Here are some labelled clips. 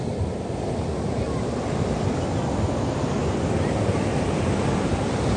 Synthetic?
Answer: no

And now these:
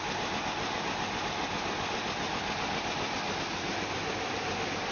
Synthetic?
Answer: no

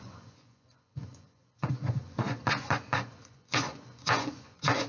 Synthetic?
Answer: yes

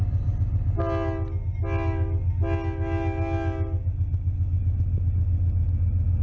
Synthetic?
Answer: no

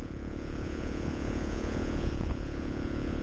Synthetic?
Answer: yes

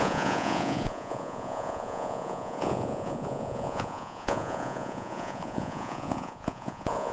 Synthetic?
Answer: yes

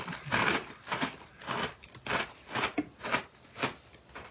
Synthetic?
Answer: no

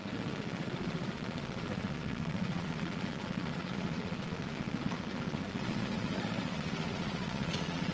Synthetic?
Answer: yes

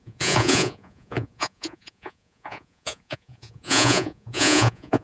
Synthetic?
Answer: yes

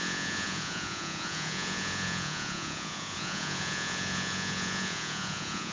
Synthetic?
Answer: yes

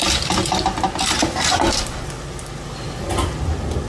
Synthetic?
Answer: no